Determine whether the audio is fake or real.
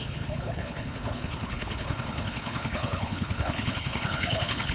fake